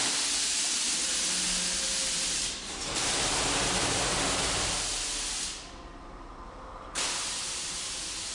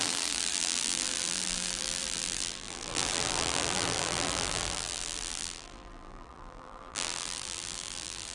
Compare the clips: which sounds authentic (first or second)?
first